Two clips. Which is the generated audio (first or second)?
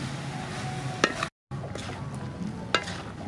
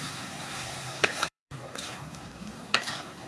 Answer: second